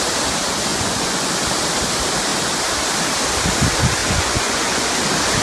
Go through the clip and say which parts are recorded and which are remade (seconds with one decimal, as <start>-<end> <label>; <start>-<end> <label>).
0.0-0.7 recorded; 0.7-1.3 remade; 1.3-4.0 recorded; 4.0-4.9 remade; 4.9-5.4 recorded